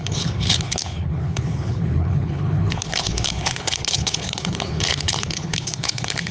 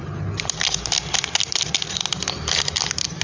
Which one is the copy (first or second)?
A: first